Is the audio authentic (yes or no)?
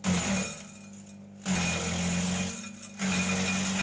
yes